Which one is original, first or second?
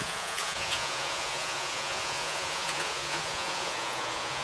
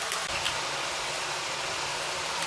second